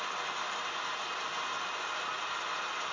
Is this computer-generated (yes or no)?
no